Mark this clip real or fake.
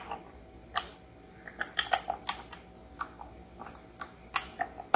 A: real